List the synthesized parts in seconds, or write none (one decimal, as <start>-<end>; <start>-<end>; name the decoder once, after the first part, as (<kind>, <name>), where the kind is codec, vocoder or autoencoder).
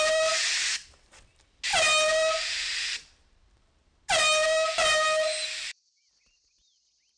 none